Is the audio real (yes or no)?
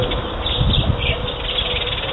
yes